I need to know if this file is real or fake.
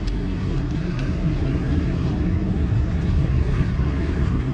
fake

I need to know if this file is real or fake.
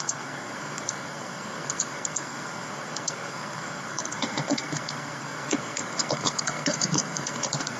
fake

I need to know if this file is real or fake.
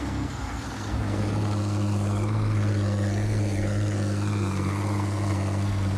fake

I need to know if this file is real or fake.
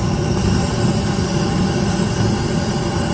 real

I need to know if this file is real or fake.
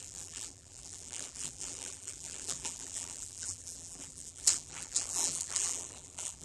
fake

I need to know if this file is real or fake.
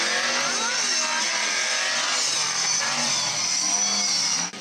real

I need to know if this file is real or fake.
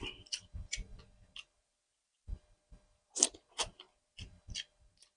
real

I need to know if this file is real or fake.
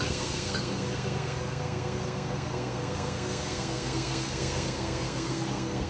fake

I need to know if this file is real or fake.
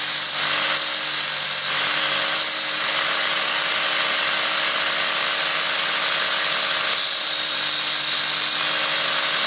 real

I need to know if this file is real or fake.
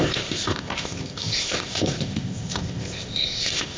fake